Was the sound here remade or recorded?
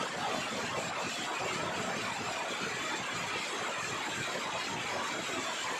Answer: recorded